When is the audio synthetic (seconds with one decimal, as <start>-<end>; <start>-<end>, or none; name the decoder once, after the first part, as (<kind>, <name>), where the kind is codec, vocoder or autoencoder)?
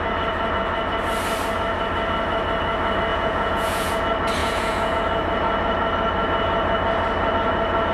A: 3.1-4.0 (vocoder, Vocos); 4.4-5.0